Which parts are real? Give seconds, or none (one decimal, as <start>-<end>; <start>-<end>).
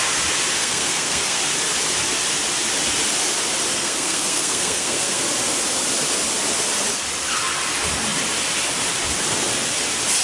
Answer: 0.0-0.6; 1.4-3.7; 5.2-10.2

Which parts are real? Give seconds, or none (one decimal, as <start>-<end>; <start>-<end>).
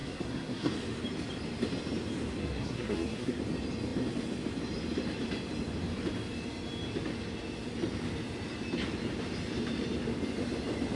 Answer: 0.7-2.4; 3.4-11.0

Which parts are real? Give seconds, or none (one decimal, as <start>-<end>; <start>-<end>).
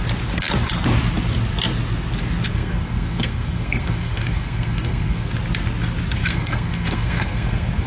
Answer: 0.0-2.5; 5.3-6.2